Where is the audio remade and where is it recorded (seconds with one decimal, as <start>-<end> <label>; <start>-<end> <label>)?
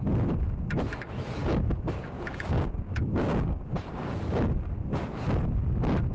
0.0-1.4 recorded; 1.4-5.1 remade; 5.1-6.1 recorded